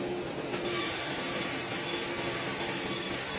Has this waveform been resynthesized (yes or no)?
no